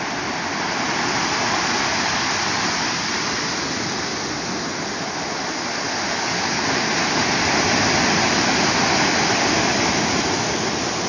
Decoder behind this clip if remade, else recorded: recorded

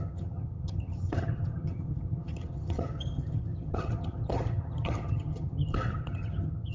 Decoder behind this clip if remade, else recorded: remade, vocoder, HiFi-GAN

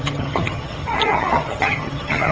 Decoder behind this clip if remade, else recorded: remade, vocoder, HiFi-GAN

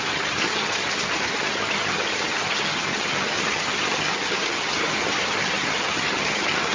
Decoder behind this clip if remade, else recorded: remade, vocoder, HiFi-GAN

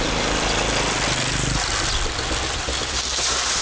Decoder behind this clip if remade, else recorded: recorded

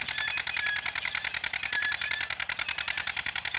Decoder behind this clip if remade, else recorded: recorded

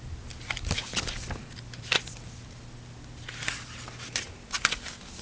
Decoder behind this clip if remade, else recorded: recorded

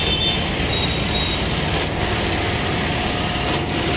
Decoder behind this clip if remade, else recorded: recorded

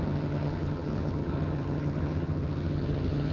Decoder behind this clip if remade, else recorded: remade, vocoder, HiFi-GAN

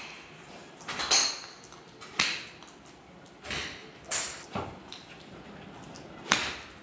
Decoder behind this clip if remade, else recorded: recorded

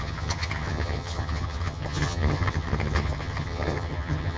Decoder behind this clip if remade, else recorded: remade, vocoder, HiFi-GAN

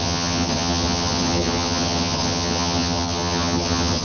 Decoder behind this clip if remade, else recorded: remade, vocoder, HiFi-GAN